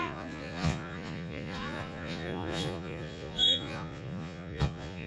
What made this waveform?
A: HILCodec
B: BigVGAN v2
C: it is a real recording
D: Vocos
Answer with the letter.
D